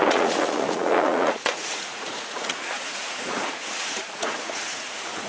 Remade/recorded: remade